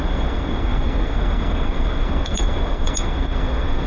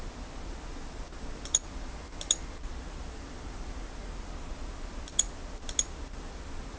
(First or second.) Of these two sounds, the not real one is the first